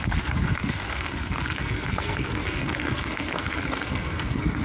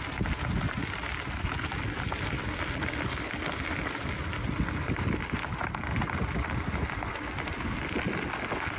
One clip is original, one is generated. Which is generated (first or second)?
first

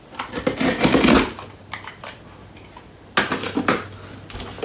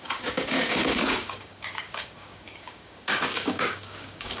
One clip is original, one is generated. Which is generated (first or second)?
second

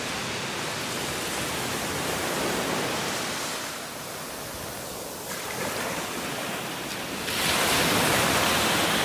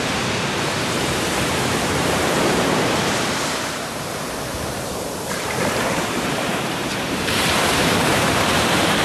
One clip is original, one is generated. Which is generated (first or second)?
second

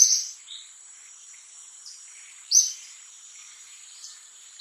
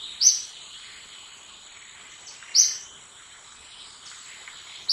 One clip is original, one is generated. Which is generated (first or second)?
first